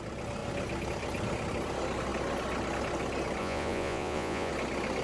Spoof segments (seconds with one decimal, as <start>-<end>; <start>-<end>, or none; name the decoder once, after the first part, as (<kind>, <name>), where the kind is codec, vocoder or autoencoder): 3.4-4.5 (vocoder, Vocos)